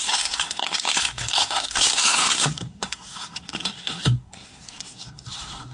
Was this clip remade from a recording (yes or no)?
yes